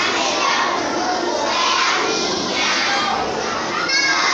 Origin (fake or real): real